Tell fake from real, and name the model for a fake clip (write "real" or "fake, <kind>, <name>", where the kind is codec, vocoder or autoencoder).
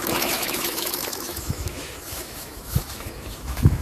fake, autoencoder, DAC-VAE